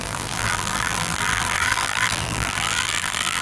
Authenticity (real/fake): fake